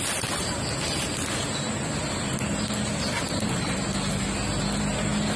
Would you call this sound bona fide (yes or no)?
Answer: yes